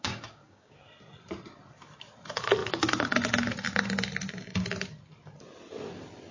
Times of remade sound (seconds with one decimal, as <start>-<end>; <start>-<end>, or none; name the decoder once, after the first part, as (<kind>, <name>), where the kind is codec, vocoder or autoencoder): 0.0-0.8 (codec, DAC)

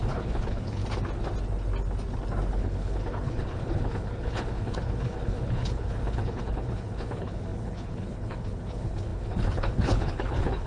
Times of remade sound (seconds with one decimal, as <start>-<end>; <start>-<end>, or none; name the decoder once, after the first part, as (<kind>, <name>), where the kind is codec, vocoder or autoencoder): 0.0-0.8 (codec, HILCodec); 2.5-10.7

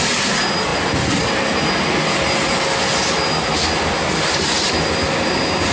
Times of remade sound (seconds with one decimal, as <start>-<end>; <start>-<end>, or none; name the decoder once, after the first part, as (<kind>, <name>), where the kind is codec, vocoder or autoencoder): none

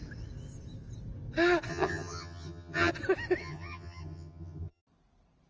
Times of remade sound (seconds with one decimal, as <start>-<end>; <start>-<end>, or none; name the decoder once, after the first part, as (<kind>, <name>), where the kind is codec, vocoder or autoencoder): 1.7-2.9 (vocoder, HiFi-GAN); 3.4-4.8

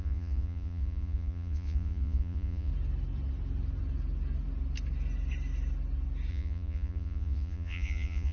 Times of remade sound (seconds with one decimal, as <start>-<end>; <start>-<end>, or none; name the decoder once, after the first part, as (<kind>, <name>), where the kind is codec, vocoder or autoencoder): 0.0-2.7 (vocoder, Vocos); 6.3-8.3